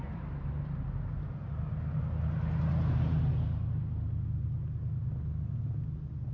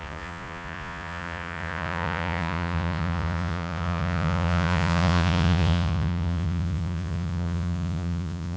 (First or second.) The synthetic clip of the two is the second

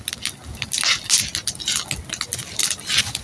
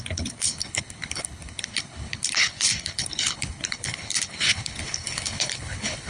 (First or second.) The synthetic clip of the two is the second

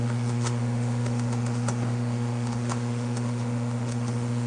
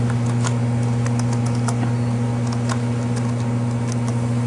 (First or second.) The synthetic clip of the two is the first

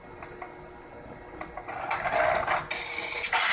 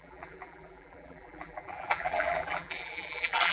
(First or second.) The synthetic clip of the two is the second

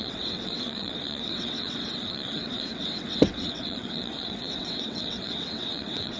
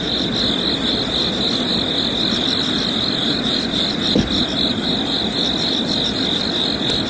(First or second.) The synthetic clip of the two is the first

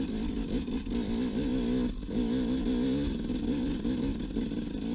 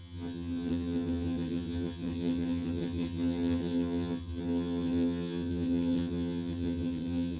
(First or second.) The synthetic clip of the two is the second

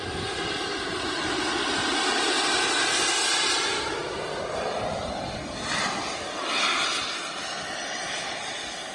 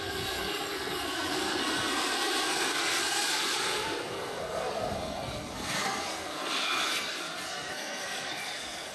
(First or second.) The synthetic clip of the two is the second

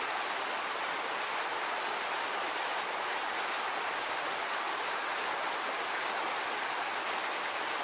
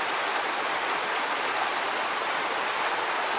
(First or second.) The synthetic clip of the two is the second